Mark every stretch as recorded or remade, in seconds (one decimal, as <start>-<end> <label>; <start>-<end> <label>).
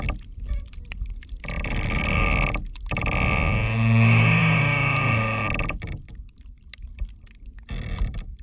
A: 0.0-8.4 recorded